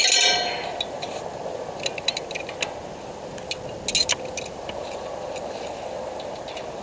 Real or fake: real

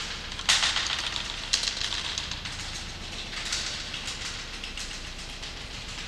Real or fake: real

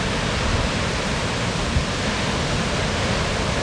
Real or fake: real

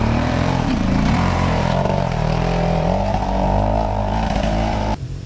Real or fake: fake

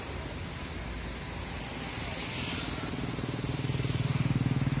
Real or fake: real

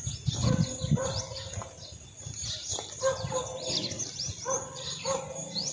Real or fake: real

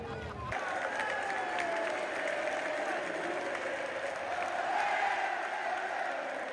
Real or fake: real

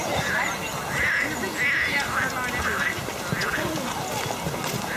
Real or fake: real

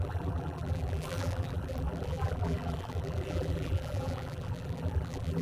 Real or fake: fake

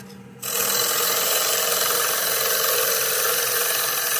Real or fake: real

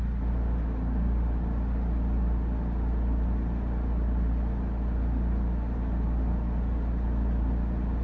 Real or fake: real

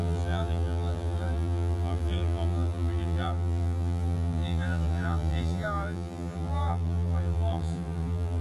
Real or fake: fake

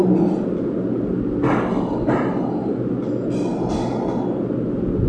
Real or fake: real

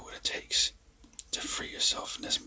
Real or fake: real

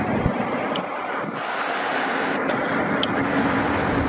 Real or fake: real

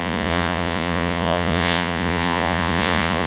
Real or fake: fake